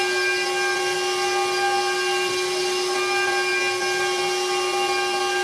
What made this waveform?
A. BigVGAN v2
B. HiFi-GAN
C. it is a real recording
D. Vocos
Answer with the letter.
C